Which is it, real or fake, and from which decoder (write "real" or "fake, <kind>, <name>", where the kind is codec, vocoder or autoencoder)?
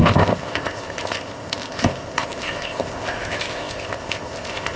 fake, codec, ZipCodec